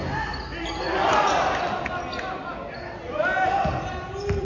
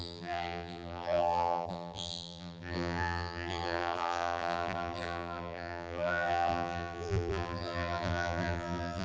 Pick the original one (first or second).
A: first